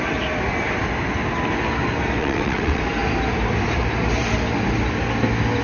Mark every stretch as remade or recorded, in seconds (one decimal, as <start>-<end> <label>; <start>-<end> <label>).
0.0-2.2 recorded; 2.2-2.8 remade; 2.8-5.6 recorded